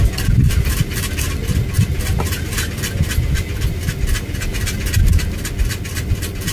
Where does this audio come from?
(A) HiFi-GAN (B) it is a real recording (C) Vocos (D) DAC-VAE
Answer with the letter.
B